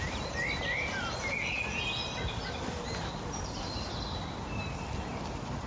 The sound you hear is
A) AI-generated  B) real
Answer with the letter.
B